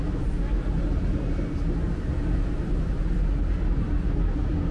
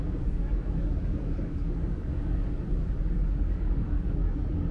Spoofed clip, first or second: second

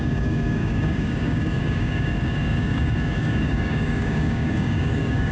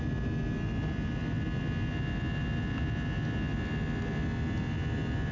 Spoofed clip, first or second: first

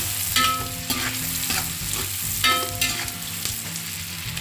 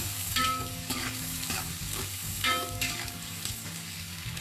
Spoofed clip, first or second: second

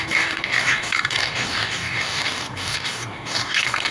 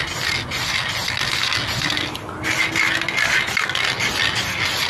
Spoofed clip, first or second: first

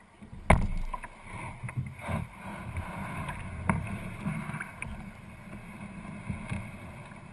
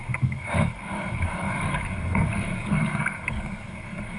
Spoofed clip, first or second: second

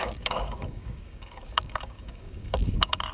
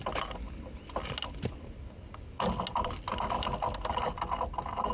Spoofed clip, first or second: first